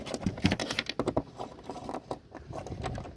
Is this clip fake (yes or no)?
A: no